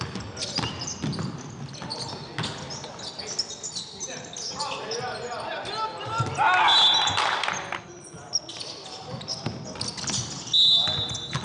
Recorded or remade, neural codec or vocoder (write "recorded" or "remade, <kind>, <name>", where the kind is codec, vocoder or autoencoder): recorded